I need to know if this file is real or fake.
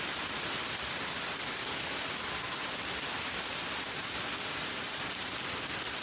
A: real